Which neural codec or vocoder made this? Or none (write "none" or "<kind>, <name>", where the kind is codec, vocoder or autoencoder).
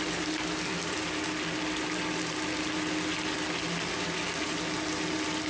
none